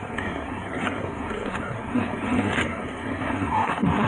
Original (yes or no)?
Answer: no